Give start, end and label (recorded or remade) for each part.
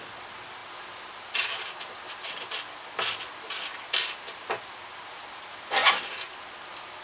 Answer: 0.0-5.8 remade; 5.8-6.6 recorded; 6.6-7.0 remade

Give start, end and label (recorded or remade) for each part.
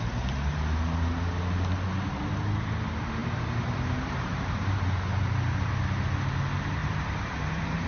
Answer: 0.0-3.2 recorded; 3.2-5.7 remade; 5.7-6.8 recorded; 6.8-7.9 remade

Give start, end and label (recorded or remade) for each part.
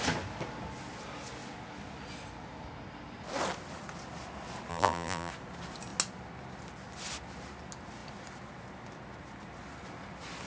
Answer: 0.0-4.7 recorded; 4.7-5.3 remade; 5.3-10.5 recorded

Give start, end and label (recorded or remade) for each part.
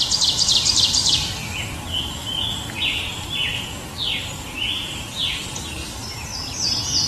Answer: 0.0-1.0 recorded; 1.0-1.6 remade; 1.6-7.1 recorded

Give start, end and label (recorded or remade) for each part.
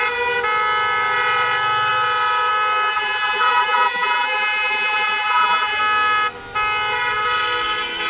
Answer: 0.0-2.9 recorded; 2.9-5.8 remade; 5.8-8.1 recorded